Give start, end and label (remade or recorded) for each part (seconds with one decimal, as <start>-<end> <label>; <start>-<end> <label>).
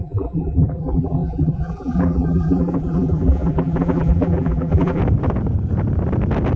0.0-5.0 remade; 5.0-6.6 recorded